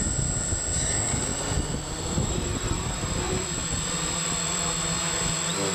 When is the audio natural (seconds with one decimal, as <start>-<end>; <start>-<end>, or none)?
0.0-1.3; 3.2-5.7